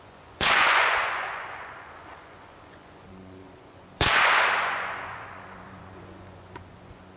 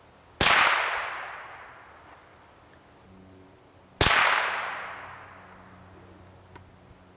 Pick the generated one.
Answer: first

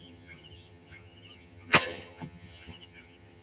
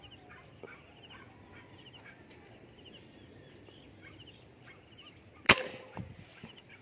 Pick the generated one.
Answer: first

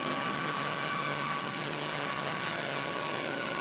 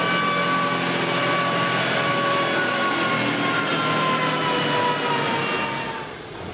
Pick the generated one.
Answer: first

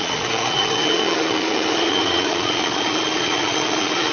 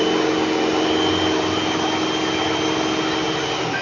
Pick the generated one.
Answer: first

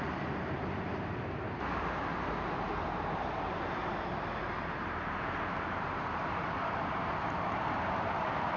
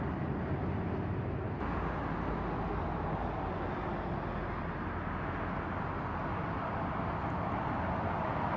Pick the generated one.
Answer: first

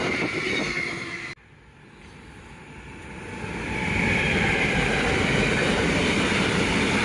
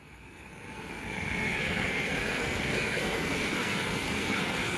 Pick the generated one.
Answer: second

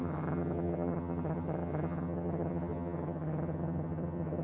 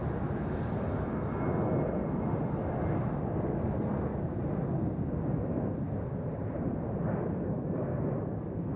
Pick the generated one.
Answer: first